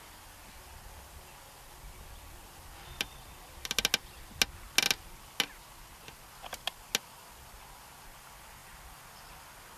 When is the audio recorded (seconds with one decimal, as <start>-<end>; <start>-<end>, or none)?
0.0-9.8